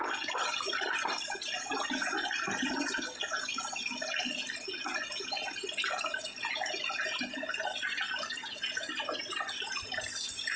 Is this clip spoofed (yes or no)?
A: no